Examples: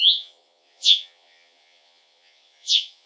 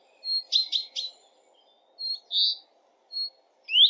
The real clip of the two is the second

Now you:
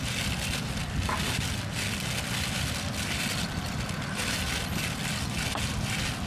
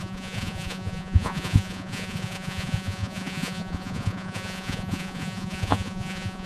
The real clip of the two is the first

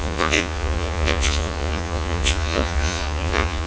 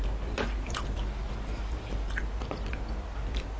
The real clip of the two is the second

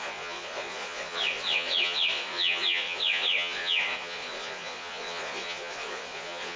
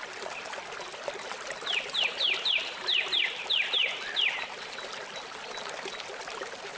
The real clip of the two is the second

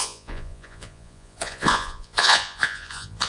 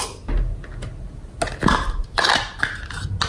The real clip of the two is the second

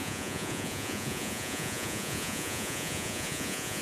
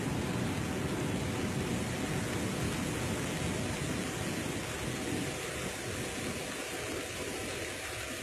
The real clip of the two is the second